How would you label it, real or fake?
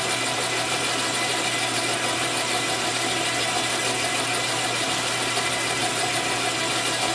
real